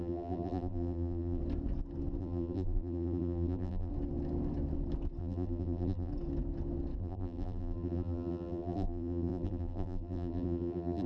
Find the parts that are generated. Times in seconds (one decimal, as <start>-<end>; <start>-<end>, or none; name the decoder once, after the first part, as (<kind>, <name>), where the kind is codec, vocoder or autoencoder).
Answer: 0.0-1.4 (vocoder, BigVGAN v2); 2.2-3.9; 5.2-6.1; 7.0-11.1